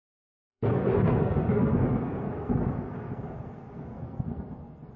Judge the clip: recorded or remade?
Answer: remade